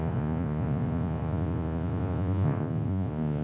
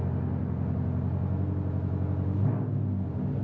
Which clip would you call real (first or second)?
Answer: second